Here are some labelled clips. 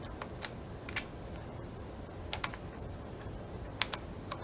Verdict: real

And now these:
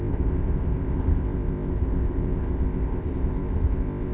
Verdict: fake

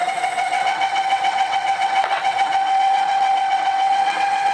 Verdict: fake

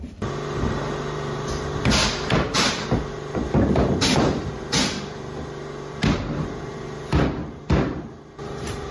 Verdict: fake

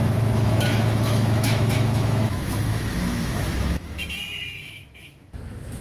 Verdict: fake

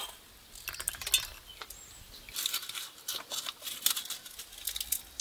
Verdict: real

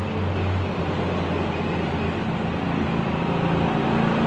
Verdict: real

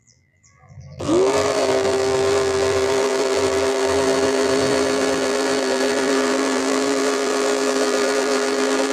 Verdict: fake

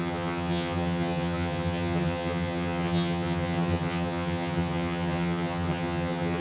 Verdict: fake